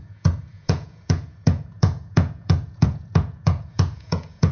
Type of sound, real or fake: fake